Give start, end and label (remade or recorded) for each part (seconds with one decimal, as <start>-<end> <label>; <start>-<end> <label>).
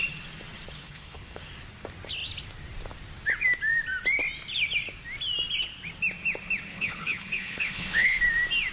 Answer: 0.0-0.8 recorded; 0.8-1.4 remade; 1.4-6.7 recorded; 6.7-8.2 remade; 8.2-8.7 recorded